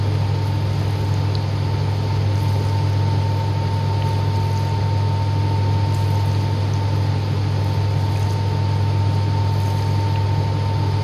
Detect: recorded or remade recorded